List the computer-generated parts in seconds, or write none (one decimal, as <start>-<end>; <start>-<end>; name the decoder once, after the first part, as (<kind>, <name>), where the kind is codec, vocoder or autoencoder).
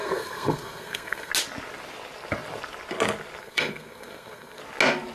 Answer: 0.0-1.3 (codec, SNAC); 3.4-4.6